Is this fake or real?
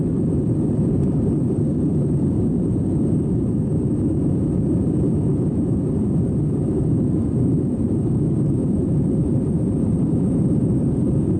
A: fake